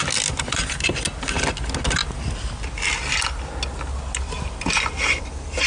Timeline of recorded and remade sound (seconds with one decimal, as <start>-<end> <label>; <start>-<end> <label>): 0.0-5.7 recorded

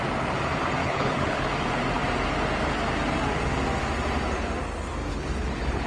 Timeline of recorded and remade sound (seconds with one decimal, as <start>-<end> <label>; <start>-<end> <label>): 0.0-0.8 recorded; 0.8-1.5 remade; 1.5-5.1 recorded; 5.1-5.9 remade

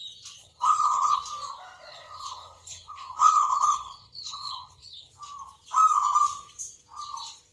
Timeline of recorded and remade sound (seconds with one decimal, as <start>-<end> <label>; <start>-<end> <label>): 0.0-0.4 recorded; 0.4-1.2 remade; 1.2-1.9 recorded; 1.9-5.1 remade; 5.1-7.5 recorded

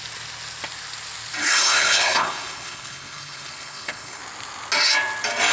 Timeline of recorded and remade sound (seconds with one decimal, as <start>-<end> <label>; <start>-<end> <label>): 0.0-1.4 recorded; 1.4-4.2 remade; 4.2-5.5 recorded

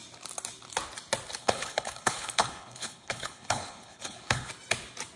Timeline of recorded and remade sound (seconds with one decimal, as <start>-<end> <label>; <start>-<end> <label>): 0.0-1.4 recorded; 1.4-4.5 remade; 4.5-5.2 recorded

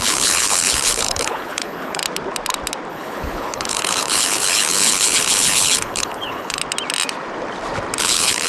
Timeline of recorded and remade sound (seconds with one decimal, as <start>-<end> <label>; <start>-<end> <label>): 0.0-2.0 remade; 2.0-2.9 recorded; 2.9-6.6 remade; 6.6-8.0 recorded; 8.0-8.5 remade

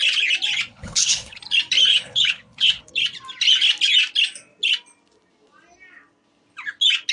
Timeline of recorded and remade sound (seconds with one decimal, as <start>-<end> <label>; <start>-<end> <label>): 0.0-0.7 recorded; 0.7-1.4 remade; 1.4-1.9 recorded; 1.9-2.8 remade; 2.8-7.1 recorded

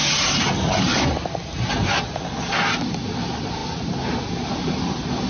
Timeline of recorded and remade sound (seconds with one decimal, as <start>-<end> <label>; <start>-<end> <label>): 0.0-5.3 recorded